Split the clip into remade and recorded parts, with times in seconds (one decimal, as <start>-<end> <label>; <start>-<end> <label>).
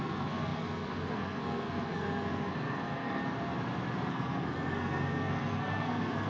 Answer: 0.0-3.2 remade; 3.2-4.1 recorded; 4.1-6.3 remade